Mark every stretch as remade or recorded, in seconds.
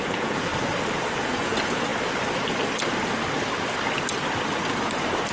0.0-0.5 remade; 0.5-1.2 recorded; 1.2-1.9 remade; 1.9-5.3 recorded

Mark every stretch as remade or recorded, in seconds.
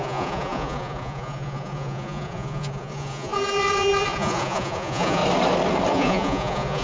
0.0-5.2 remade; 5.2-5.9 recorded; 5.9-6.8 remade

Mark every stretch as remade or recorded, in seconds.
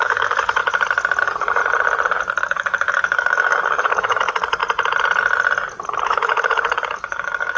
0.0-0.6 remade; 0.6-1.2 recorded; 1.2-1.6 remade; 1.6-2.4 recorded; 2.4-4.6 remade; 4.6-6.0 recorded; 6.0-7.6 remade